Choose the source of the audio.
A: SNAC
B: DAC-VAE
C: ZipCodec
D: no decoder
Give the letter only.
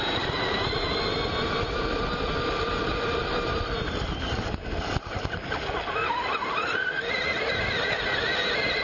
D